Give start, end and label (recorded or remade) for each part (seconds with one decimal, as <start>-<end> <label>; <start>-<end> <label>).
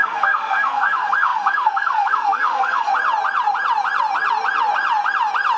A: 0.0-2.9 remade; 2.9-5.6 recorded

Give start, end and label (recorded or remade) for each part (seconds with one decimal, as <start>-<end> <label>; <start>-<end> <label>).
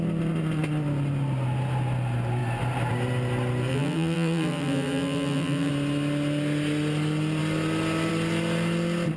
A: 0.0-3.7 recorded; 3.7-5.7 remade; 5.7-9.2 recorded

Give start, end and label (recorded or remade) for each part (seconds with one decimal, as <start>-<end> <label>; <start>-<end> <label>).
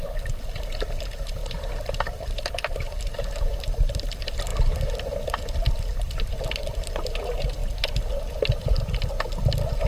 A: 0.0-1.4 recorded; 1.4-3.2 remade; 3.2-4.5 recorded; 4.5-5.8 remade; 5.8-7.6 recorded; 7.6-9.9 remade